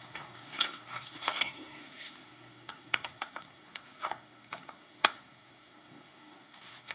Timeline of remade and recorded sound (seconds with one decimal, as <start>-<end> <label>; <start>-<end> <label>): 0.0-6.9 remade